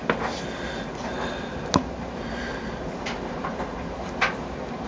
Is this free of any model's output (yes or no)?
yes